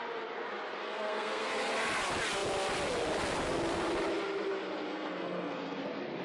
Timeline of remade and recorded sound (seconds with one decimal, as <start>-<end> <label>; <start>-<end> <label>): 0.0-0.8 recorded; 0.8-1.5 remade; 1.5-4.9 recorded; 4.9-5.8 remade; 5.8-6.2 recorded